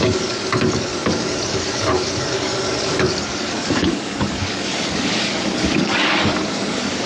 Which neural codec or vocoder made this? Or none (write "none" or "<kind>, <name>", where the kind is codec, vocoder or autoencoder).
codec, DAC